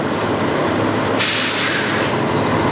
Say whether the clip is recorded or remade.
recorded